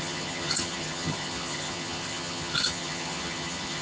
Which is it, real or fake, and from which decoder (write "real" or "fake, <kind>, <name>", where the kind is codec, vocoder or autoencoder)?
fake, vocoder, HiFi-GAN